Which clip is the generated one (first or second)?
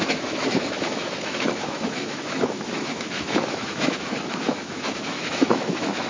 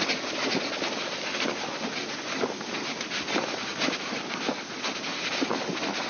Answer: first